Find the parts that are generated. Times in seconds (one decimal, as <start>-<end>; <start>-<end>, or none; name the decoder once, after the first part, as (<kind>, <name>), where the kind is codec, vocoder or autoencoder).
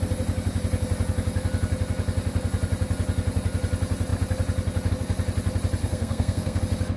5.8-6.6 (codec, SNAC)